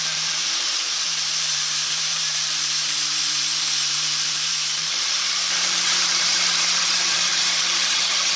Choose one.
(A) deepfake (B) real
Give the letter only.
A